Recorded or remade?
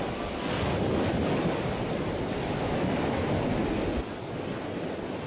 recorded